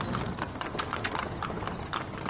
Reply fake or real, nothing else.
real